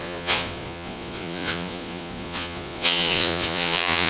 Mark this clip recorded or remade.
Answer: remade